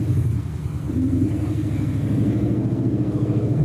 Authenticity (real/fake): fake